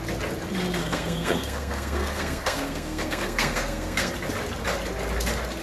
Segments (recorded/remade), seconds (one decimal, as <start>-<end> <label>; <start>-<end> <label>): 0.0-0.8 recorded; 0.8-4.1 remade; 4.1-5.6 recorded